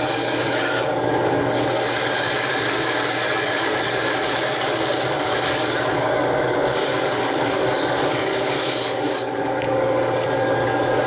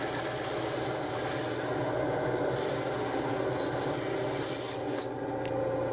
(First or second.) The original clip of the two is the second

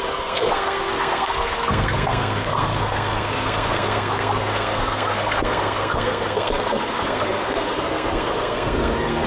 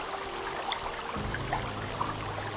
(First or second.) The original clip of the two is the second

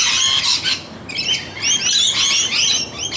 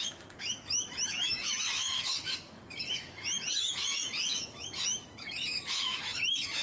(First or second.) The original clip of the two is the first